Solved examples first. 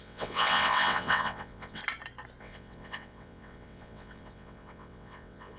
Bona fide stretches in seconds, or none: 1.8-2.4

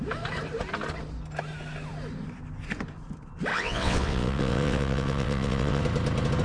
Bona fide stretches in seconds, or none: 0.0-3.5; 5.8-6.4

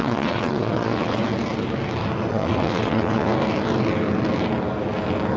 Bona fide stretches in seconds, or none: 1.2-2.3; 3.3-5.4

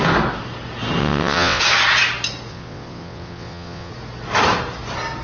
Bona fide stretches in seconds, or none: 0.0-1.0; 1.6-2.5; 3.9-5.2

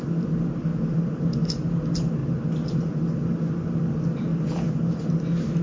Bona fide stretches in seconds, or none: 0.0-5.6

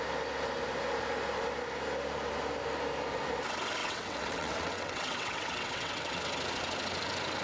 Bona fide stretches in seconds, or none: 0.0-3.8; 6.2-7.4

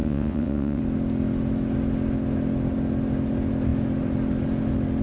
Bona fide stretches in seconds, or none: 0.8-5.0

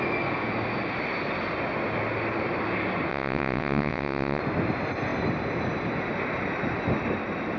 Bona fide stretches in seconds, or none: 0.0-3.1; 4.4-7.6